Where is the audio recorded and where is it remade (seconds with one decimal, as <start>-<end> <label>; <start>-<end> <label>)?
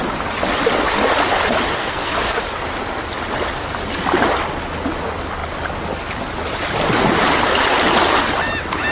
0.0-1.8 recorded; 1.8-2.4 remade; 2.4-8.9 recorded